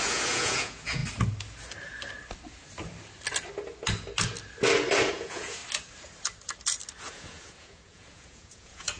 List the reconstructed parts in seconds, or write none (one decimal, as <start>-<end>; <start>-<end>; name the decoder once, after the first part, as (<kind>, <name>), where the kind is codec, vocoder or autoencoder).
0.0-1.0 (vocoder, Vocos); 5.1-5.6; 7.0-9.0